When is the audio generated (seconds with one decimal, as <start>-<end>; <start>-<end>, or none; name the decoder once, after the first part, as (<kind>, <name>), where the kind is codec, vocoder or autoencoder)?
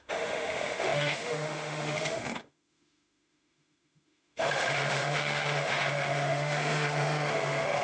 0.0-7.8 (autoencoder, DAC-VAE)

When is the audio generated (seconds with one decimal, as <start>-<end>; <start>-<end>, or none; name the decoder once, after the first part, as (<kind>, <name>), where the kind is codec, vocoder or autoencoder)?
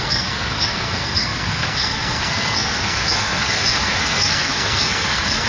0.0-5.5 (codec, SNAC)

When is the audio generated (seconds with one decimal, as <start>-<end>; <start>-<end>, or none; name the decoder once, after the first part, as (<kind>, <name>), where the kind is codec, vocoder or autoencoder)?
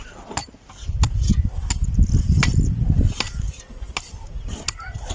none